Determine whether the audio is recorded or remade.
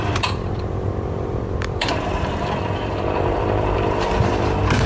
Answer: remade